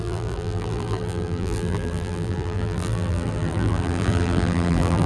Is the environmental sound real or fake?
fake